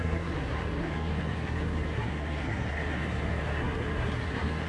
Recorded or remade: remade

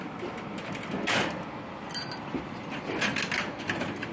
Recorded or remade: recorded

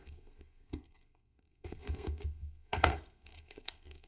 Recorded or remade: remade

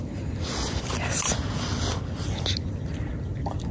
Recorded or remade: recorded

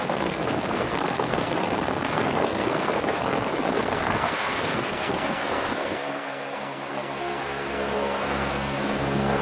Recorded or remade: remade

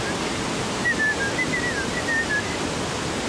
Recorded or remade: recorded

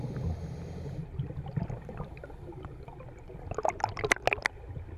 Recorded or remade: recorded